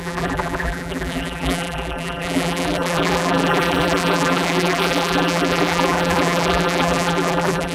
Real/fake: fake